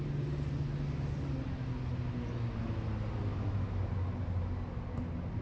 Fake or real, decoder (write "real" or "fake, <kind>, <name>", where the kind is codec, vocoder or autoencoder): real